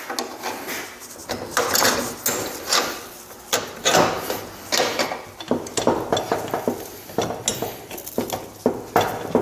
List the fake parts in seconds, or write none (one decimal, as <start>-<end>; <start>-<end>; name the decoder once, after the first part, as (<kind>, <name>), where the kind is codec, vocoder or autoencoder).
none